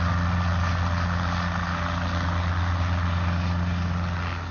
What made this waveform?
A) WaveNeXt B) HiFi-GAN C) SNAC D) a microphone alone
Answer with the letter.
D